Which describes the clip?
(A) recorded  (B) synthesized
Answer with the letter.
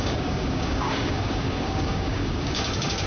B